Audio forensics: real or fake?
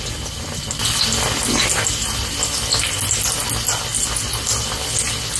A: real